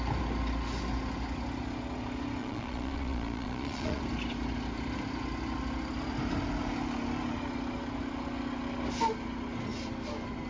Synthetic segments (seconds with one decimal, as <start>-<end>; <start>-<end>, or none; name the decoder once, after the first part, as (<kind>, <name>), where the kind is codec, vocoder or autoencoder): 2.4-4.0 (vocoder, Vocos)